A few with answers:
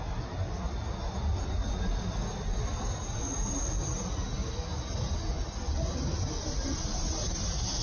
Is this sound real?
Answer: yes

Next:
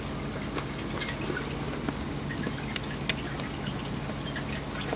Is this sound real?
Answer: yes